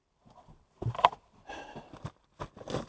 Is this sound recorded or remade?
recorded